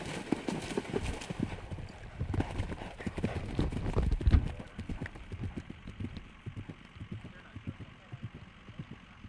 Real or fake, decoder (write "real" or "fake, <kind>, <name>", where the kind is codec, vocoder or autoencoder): real